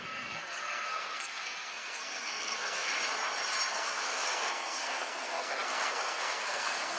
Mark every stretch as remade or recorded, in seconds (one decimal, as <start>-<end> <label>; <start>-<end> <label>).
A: 0.0-2.9 remade; 2.9-3.7 recorded; 3.7-7.0 remade